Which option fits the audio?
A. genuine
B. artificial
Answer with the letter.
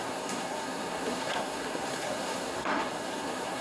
B